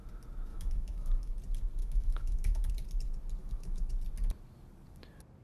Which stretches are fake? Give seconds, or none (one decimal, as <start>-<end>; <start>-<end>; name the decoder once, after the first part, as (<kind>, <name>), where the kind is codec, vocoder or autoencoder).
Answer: 0.5-1.3 (autoencoder, DAC-VAE); 1.8-2.7; 3.4-3.9